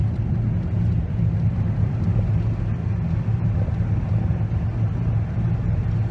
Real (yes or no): yes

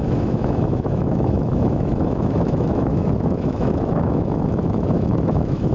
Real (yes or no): no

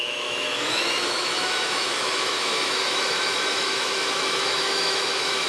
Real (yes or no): no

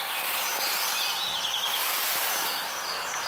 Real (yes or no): yes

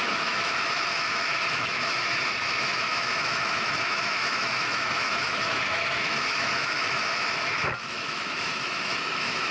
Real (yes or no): no